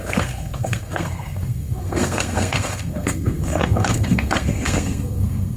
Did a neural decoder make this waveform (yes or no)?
yes